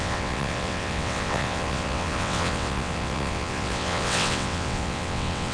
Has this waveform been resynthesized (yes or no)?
yes